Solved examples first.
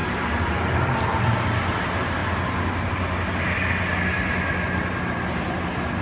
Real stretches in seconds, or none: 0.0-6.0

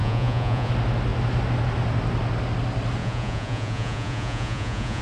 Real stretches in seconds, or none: 0.7-3.0

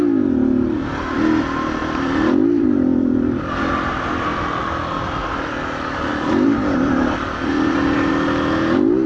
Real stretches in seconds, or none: 0.0-1.8; 3.9-6.1; 8.1-9.1

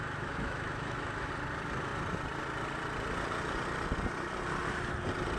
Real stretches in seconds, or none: 1.3-5.4